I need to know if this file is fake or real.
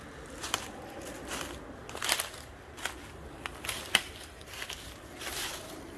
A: real